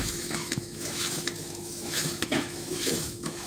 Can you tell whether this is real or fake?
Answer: fake